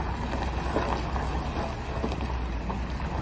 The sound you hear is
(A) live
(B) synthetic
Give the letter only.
A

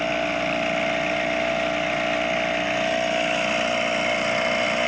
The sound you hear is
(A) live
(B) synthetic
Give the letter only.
A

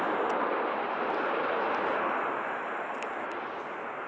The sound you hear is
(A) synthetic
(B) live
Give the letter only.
B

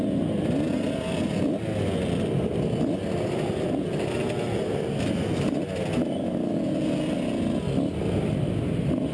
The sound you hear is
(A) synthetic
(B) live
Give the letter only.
B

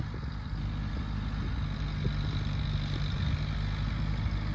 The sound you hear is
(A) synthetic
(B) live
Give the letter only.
B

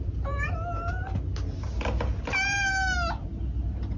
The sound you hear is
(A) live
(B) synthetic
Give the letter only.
A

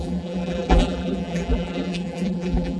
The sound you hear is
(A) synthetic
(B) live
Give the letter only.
A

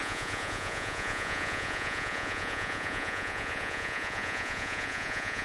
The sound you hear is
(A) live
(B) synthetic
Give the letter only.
B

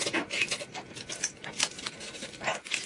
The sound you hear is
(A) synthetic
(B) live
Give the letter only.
B